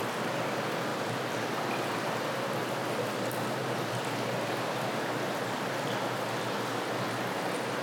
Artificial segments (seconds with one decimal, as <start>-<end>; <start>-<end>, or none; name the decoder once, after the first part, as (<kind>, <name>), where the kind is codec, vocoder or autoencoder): none